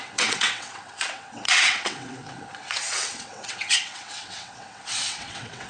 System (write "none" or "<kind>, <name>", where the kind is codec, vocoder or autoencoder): vocoder, WaveNeXt